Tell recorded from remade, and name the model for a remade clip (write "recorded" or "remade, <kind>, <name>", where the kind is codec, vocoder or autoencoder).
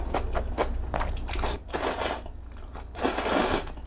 recorded